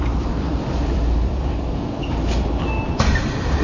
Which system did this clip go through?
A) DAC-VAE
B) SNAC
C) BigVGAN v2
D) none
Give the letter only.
C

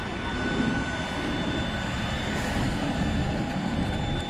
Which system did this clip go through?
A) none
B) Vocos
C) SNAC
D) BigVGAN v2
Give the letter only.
A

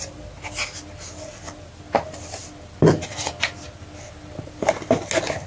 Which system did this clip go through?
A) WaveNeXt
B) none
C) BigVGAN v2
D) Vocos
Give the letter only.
B